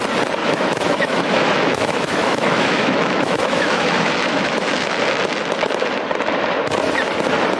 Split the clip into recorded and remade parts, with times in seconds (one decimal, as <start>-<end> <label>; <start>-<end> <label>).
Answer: 0.0-0.4 recorded; 0.4-5.0 remade; 5.0-7.6 recorded